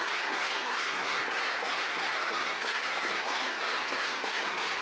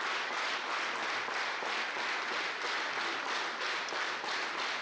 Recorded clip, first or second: second